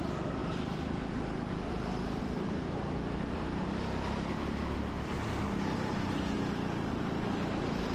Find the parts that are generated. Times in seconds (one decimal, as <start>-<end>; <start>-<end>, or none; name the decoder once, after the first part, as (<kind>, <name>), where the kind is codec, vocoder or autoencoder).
2.2-6.9 (vocoder, BigVGAN v2)